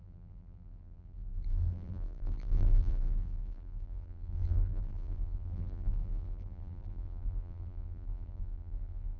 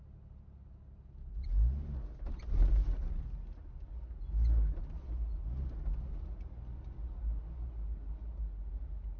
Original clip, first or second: second